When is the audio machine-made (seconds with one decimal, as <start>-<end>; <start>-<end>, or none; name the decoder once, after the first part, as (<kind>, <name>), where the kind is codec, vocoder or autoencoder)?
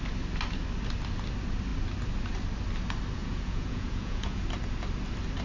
3.2-4.4 (vocoder, Vocos)